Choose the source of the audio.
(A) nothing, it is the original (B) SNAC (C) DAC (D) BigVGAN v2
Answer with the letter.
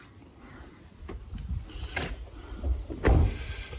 A